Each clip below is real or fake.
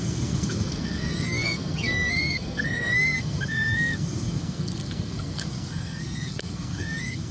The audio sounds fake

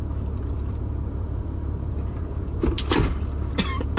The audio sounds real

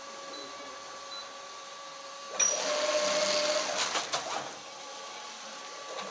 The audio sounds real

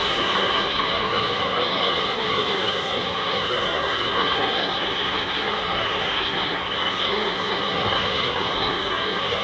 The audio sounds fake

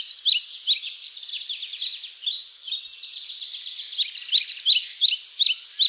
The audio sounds real